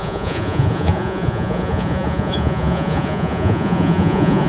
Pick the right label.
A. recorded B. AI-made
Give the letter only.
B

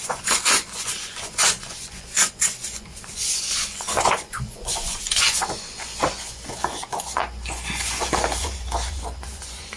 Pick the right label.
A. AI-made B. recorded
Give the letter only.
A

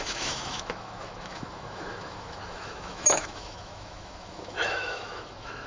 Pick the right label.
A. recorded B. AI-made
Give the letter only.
B